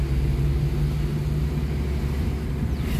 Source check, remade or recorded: recorded